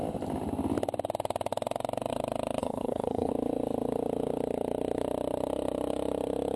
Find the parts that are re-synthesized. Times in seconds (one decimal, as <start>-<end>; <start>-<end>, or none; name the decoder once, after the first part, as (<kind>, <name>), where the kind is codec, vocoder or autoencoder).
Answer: 2.6-3.3 (codec, SNAC)